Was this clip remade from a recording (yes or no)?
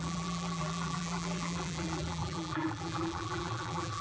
yes